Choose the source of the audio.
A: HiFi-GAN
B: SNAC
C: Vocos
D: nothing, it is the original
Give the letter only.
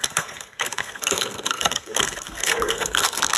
B